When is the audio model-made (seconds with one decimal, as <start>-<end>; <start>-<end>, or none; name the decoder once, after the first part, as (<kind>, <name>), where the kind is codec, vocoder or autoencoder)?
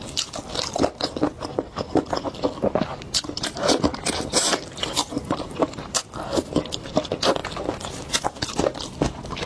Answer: 2.9-6.1 (vocoder, BigVGAN v2)